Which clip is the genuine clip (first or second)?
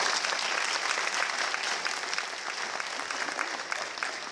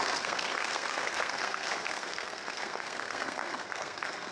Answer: first